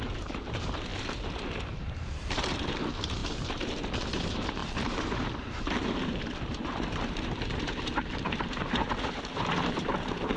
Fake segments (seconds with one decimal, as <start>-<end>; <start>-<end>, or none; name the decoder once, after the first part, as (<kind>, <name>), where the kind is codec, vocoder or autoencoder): 0.0-0.9 (vocoder, BigVGAN v2); 1.8-10.4